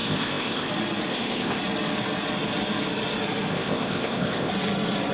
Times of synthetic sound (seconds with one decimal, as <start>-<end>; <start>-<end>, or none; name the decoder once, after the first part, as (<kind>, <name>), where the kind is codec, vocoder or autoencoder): 0.0-0.7 (codec, ZipCodec); 1.1-1.6; 3.5-4.5